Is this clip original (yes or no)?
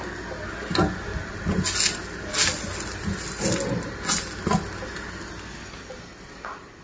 yes